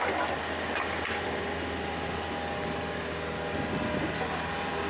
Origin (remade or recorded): recorded